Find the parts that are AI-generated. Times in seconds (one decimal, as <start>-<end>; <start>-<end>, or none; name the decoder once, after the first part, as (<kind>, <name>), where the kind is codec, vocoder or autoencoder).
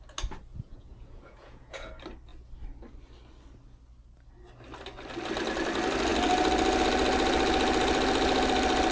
0.5-1.9 (vocoder, Vocos)